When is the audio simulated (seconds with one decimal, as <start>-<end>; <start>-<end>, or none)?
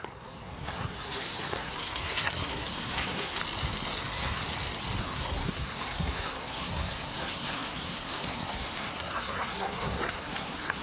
0.0-3.4; 4.0-4.4; 5.0-10.8